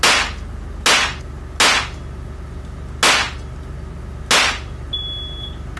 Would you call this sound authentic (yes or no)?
yes